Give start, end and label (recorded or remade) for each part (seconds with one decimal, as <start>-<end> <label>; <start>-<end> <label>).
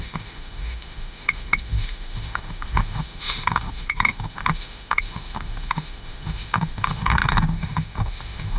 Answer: 0.0-8.6 remade